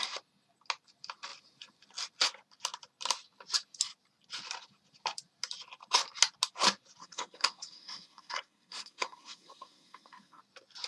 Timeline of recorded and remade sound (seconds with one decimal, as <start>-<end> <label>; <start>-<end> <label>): 0.0-7.0 recorded; 7.0-10.4 remade; 10.4-10.9 recorded